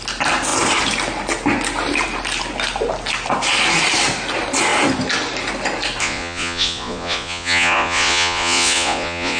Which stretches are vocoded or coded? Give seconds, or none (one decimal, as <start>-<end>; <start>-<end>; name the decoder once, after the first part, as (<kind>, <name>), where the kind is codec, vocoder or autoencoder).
6.0-9.4 (vocoder, Vocos)